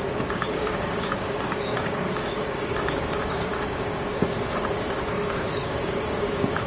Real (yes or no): no